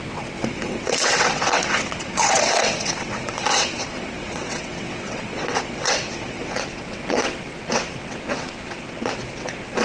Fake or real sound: fake